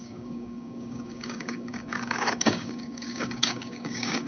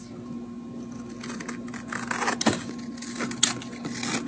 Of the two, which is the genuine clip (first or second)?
second